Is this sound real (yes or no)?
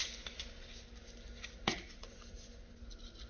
yes